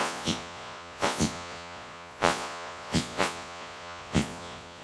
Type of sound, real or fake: fake